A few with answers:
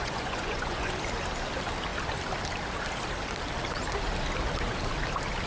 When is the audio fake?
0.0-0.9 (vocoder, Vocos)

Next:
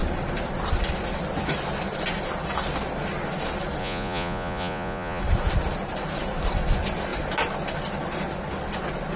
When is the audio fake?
3.8-5.2 (vocoder, Vocos)

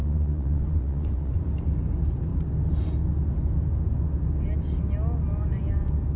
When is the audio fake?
0.0-1.4 (vocoder, Vocos)

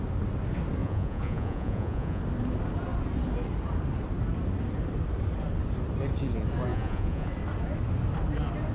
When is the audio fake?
0.8-2.2 (vocoder, Vocos); 6.7-7.3

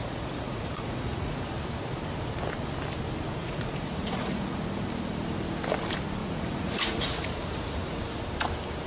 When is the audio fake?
0.0-1.5 (vocoder, Vocos); 3.4-4.6; 6.2-8.0